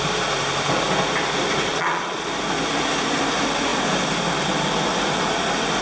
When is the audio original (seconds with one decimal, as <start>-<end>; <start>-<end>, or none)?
0.0-1.7; 2.3-5.8